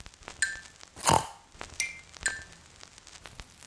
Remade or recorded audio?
recorded